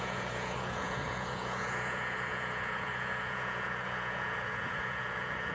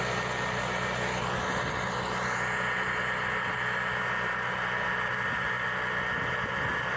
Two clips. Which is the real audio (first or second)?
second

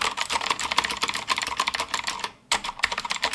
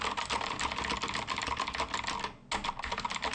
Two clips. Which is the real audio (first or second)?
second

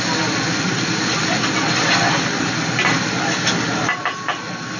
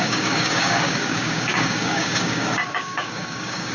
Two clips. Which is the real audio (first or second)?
first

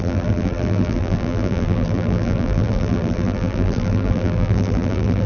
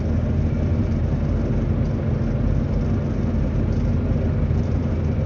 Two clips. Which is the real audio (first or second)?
second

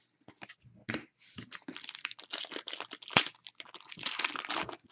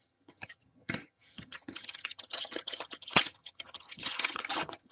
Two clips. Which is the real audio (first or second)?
first